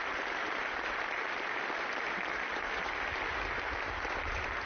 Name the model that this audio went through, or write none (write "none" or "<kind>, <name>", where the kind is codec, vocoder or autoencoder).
vocoder, BigVGAN v2